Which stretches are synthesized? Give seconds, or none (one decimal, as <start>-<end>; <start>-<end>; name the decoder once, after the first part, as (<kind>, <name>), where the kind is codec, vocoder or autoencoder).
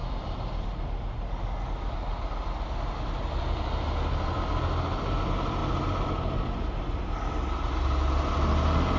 none